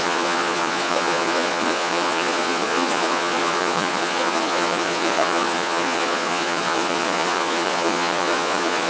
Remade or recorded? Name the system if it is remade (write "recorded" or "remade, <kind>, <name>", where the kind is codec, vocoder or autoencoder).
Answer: remade, vocoder, Vocos